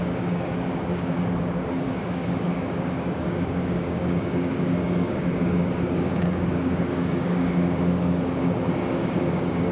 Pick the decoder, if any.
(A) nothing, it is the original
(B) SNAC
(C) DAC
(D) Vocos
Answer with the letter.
C